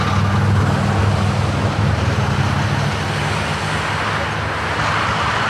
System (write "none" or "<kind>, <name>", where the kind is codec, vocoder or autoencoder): none